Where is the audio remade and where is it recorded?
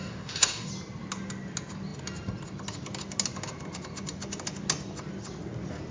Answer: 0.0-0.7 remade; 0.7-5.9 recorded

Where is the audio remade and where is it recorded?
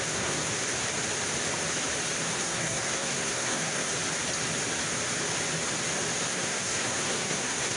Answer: 0.0-0.4 remade; 0.4-2.4 recorded; 2.4-3.9 remade; 3.9-6.3 recorded; 6.3-7.8 remade